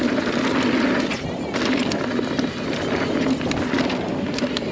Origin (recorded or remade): recorded